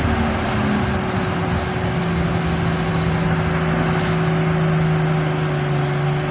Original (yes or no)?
yes